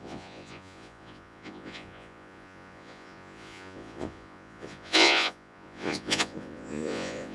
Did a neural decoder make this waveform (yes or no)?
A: yes